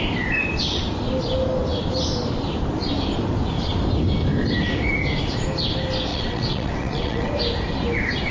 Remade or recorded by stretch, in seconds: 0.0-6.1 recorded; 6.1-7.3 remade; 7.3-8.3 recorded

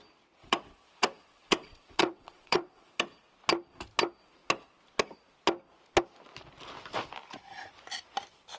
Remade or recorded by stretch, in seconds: 0.0-0.4 recorded; 0.4-3.0 remade; 3.0-8.6 recorded